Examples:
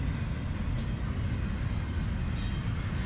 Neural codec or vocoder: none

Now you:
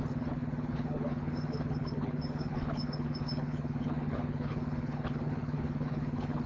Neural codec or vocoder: codec, HILCodec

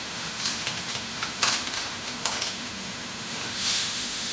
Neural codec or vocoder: autoencoder, DAC-VAE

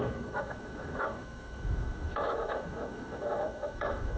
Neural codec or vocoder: autoencoder, DAC-VAE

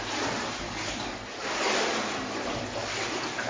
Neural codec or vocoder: none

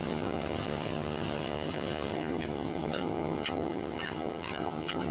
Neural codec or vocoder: vocoder, HiFi-GAN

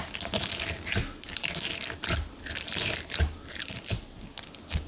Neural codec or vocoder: none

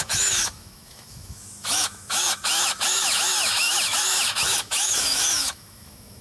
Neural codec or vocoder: autoencoder, DAC-VAE